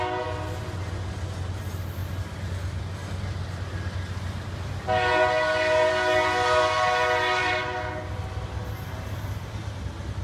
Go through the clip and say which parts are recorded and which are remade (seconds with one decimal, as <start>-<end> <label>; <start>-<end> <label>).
0.0-10.2 recorded